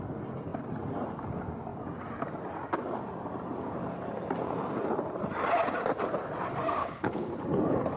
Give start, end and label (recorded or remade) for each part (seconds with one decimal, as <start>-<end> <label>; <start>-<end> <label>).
0.0-6.8 recorded; 6.8-7.3 remade; 7.3-8.0 recorded